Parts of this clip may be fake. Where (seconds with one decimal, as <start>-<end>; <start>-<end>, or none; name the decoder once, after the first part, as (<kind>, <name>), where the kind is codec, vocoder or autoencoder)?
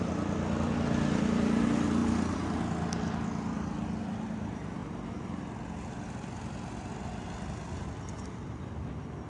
none